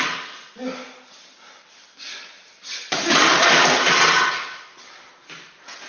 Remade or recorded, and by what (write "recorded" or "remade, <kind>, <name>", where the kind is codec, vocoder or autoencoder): recorded